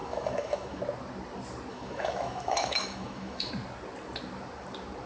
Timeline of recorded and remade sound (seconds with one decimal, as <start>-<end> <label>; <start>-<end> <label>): 0.0-0.8 remade; 0.8-1.7 recorded; 1.7-3.5 remade; 3.5-5.1 recorded